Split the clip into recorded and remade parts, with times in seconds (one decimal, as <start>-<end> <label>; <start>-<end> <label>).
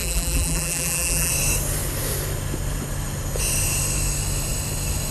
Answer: 0.0-1.3 remade; 1.3-5.1 recorded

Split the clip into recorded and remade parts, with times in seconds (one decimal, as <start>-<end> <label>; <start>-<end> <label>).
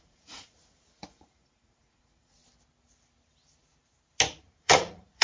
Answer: 0.0-2.4 remade; 2.4-4.3 recorded; 4.3-5.2 remade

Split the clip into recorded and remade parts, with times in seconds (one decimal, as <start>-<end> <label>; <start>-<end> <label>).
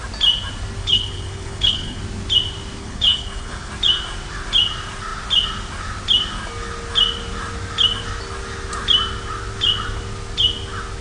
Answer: 0.0-0.8 recorded; 0.8-2.0 remade; 2.0-2.8 recorded; 2.8-3.7 remade; 3.7-11.0 recorded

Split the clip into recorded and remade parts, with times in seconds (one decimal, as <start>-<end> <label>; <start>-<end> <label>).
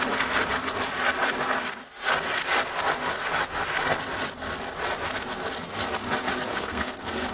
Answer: 0.0-6.5 recorded; 6.5-7.3 remade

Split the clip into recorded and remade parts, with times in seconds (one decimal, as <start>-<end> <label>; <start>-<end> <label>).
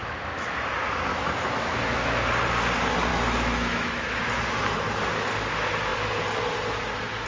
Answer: 0.0-0.7 remade; 0.7-1.1 recorded; 1.1-2.2 remade; 2.2-3.1 recorded; 3.1-4.2 remade; 4.2-7.3 recorded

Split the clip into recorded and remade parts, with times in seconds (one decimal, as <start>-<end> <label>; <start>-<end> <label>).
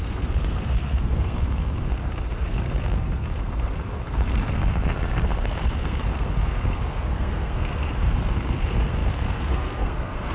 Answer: 0.0-10.3 remade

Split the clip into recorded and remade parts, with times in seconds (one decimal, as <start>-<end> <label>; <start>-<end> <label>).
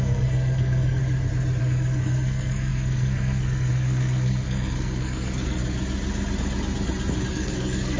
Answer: 0.0-1.0 remade; 1.0-1.6 recorded; 1.6-5.6 remade; 5.6-7.3 recorded; 7.3-8.0 remade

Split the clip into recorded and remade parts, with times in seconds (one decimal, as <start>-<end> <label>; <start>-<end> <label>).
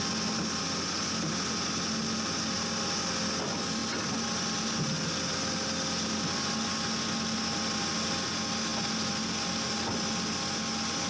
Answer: 0.0-11.1 recorded